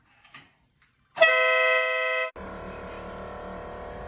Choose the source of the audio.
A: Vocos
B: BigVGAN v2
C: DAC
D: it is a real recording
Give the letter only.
D